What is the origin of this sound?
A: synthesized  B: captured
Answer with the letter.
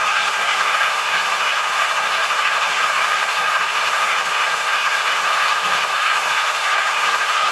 A